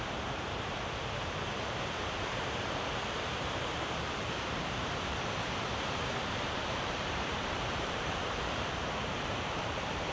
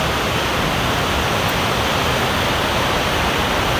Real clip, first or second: second